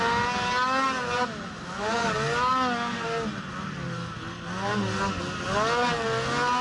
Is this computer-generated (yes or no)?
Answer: no